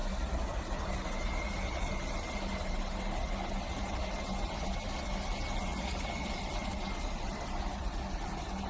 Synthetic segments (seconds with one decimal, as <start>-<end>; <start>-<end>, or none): 5.7-7.8